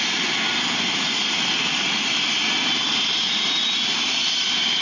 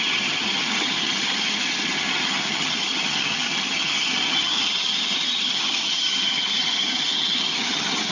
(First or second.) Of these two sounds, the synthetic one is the second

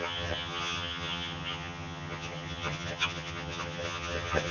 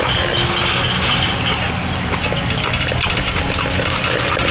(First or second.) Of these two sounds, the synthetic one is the first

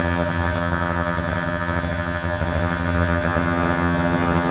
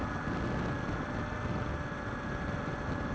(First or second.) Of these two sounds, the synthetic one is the first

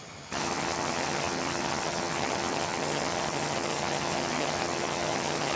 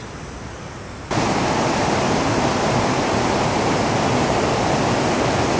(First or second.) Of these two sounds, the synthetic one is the first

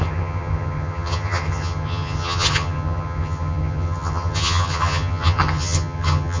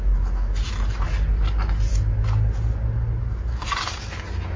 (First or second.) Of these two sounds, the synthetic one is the first